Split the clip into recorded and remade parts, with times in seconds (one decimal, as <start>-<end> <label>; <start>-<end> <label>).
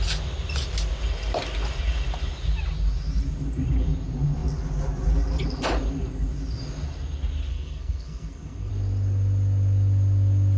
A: 0.0-7.5 recorded; 7.5-8.7 remade; 8.7-10.6 recorded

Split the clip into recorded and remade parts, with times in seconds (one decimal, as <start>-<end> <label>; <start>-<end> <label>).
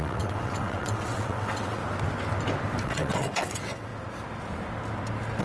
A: 0.0-1.8 remade; 1.8-2.8 recorded; 2.8-3.9 remade; 3.9-5.4 recorded